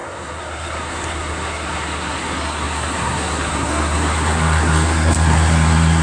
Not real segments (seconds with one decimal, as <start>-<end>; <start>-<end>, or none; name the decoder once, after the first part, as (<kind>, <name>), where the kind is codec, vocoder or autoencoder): 0.0-6.0 (codec, SNAC)